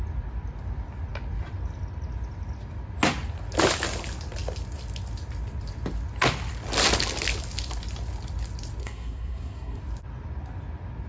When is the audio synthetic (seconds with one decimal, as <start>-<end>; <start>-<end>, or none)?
8.8-9.8